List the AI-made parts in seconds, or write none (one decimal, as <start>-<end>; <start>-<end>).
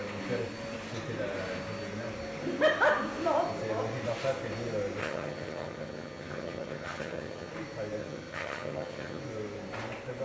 5.0-7.5; 8.0-9.2